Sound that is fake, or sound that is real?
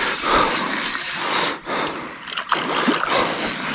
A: real